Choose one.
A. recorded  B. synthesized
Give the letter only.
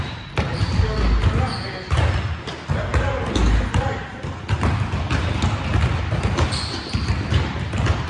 A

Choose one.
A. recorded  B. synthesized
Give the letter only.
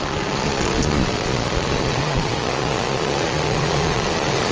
B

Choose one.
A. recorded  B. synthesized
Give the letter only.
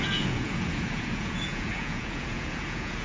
B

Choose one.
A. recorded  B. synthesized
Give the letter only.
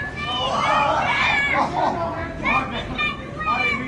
A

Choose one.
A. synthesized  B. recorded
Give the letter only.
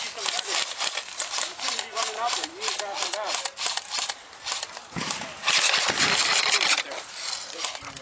B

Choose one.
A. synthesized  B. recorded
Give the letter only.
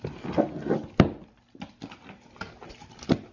B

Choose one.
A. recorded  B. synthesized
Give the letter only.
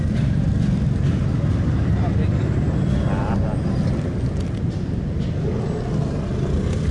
A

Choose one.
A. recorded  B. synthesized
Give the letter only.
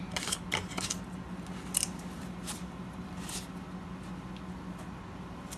A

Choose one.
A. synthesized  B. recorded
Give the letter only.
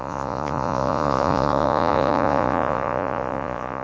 A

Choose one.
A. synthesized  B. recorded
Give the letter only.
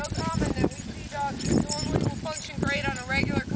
B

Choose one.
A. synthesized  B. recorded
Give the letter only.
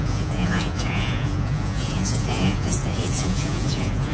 A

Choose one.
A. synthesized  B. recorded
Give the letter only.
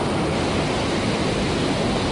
B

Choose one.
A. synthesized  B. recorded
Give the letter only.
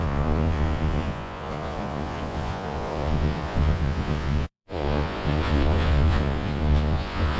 A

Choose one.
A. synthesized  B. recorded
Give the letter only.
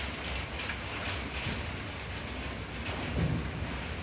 B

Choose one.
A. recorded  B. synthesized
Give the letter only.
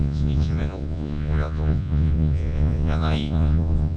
B